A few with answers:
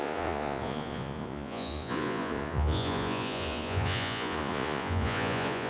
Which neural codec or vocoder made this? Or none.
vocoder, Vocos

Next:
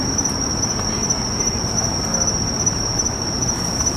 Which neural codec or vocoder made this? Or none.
vocoder, BigVGAN v2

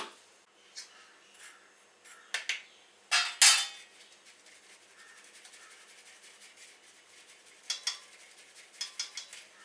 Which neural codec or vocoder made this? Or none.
none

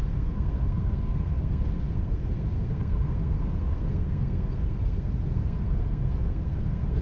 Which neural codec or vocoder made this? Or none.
codec, SNAC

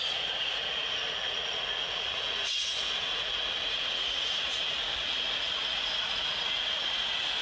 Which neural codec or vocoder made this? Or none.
vocoder, Vocos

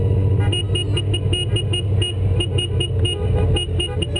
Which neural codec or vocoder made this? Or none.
none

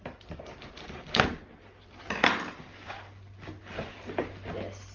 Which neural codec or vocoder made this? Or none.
none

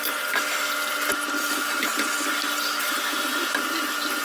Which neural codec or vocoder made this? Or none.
none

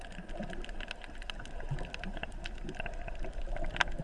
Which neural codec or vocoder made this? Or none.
none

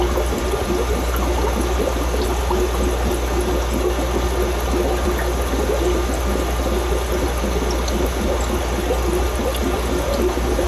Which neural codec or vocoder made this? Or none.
none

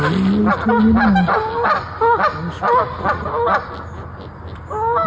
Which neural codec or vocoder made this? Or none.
none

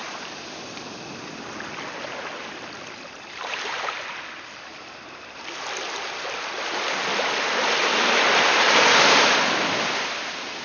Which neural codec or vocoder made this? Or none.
none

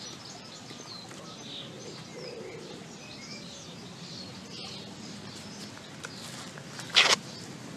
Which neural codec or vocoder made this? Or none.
none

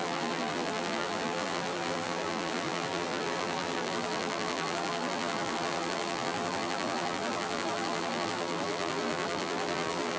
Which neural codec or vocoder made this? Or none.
vocoder, BigVGAN v2